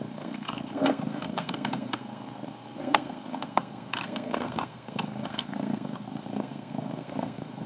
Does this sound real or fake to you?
fake